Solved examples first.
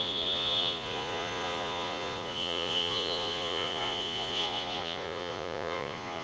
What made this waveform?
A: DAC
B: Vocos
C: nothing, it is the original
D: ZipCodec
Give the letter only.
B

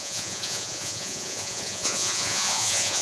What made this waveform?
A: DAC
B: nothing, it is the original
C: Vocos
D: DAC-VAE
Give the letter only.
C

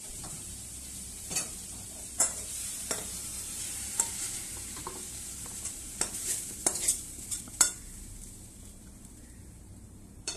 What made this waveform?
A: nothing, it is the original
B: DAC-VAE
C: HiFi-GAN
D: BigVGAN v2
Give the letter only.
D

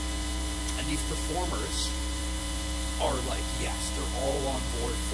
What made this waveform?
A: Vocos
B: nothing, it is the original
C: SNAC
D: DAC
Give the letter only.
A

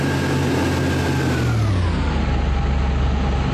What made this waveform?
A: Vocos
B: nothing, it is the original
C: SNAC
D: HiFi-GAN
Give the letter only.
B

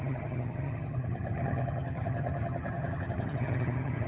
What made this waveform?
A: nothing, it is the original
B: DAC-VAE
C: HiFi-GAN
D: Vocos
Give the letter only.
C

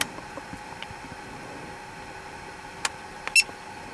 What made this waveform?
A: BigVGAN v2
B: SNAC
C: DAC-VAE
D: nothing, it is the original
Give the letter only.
D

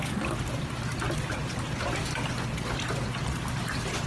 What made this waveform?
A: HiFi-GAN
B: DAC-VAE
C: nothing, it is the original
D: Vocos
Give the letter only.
C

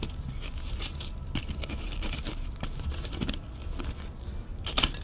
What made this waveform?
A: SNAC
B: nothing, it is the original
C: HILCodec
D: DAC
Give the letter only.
B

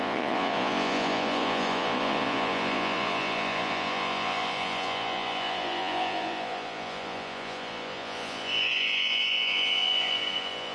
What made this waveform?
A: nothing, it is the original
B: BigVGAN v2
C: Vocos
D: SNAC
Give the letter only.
C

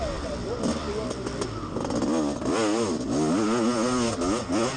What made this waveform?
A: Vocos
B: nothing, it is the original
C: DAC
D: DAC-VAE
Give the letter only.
B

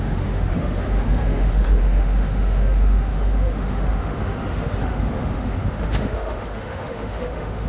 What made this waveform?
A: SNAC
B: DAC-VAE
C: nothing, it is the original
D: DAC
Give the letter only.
B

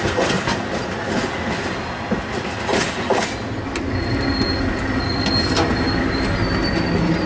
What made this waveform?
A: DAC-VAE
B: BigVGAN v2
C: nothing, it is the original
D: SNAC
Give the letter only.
C